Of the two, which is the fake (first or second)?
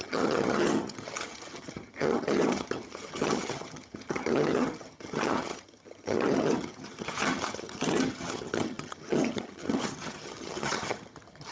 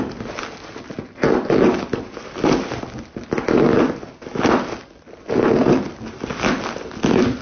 first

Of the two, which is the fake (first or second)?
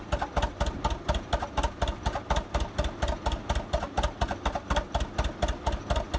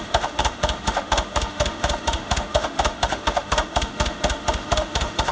second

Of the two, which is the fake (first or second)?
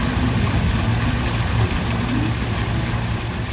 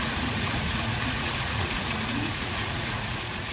second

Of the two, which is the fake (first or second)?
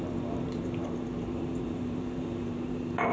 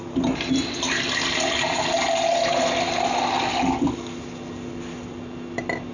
first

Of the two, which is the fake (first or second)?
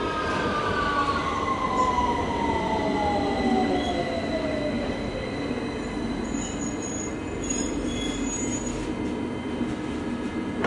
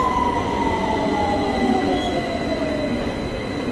second